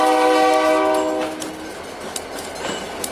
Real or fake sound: real